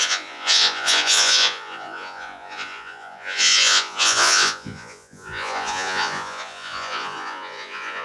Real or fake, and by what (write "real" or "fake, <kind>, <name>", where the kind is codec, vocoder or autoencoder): fake, vocoder, Vocos